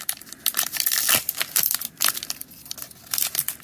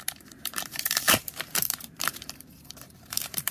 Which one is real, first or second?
first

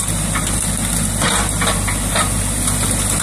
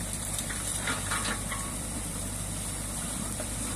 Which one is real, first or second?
first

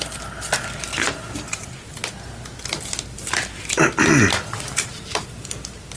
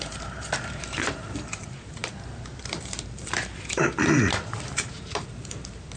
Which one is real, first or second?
first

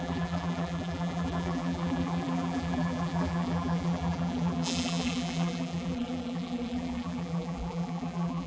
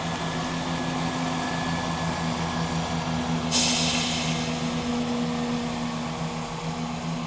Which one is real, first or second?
second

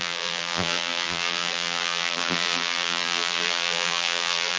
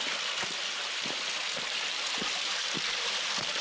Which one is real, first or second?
second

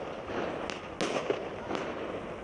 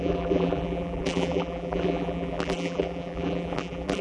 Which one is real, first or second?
first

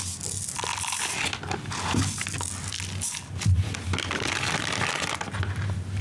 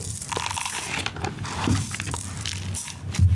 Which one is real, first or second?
first